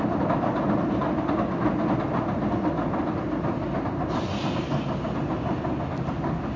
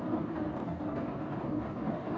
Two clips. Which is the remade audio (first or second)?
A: second